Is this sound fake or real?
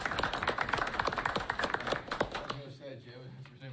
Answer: fake